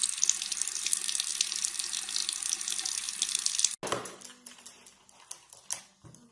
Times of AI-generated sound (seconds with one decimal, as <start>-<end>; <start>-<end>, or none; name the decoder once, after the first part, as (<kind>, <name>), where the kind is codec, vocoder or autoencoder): none